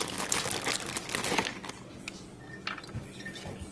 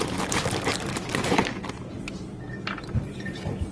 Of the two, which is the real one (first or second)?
first